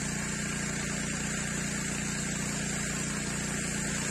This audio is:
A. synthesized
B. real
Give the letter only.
B